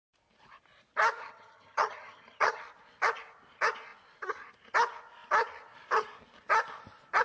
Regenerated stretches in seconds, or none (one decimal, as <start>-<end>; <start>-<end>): 1.2-2.6